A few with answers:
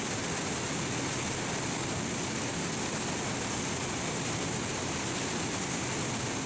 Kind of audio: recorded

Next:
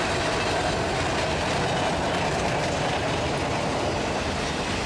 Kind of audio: recorded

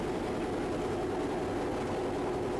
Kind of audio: recorded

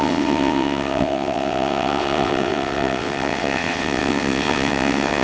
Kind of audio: remade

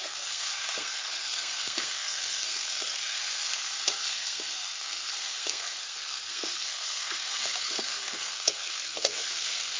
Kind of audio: remade